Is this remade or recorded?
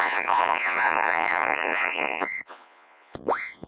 remade